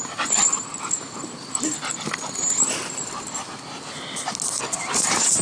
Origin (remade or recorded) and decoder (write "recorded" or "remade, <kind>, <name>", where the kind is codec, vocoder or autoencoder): recorded